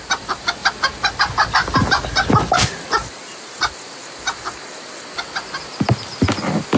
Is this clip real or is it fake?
real